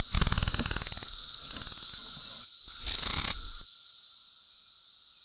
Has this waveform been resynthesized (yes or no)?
no